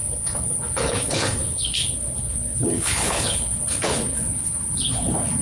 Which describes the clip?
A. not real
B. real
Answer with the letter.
A